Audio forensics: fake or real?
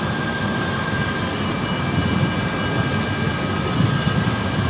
real